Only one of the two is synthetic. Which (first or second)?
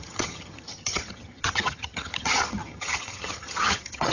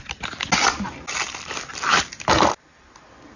first